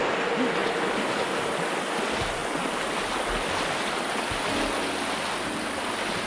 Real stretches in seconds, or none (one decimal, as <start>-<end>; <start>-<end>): 0.0-6.3